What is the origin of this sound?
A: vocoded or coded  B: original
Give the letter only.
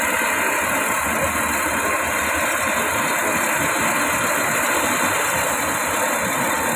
A